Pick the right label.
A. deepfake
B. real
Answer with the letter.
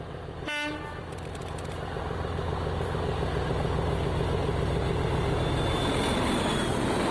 B